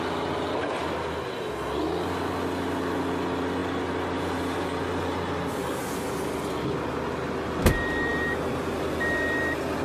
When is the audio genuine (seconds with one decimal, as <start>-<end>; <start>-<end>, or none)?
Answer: 0.0-9.8